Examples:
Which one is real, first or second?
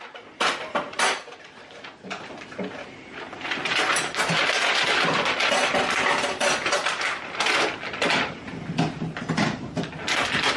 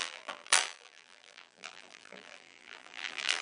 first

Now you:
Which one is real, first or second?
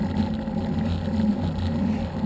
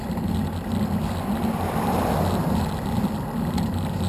first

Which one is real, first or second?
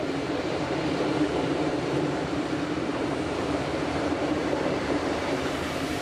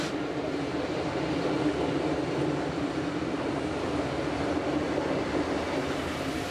second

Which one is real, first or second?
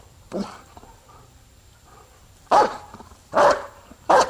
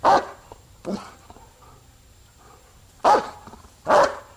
second